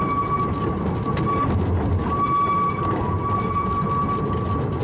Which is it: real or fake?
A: real